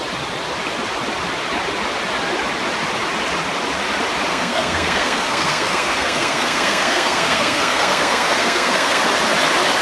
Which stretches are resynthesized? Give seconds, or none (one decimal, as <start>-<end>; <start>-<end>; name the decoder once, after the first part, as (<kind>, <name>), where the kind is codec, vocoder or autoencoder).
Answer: 4.3-9.0 (codec, SNAC)